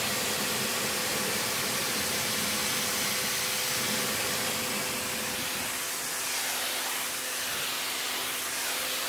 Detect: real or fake real